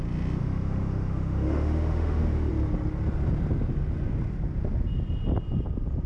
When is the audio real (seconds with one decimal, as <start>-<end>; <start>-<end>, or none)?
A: 0.0-0.4; 2.5-6.1